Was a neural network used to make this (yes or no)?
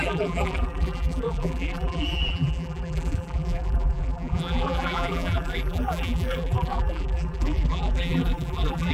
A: yes